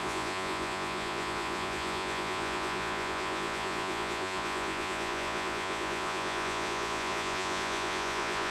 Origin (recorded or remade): remade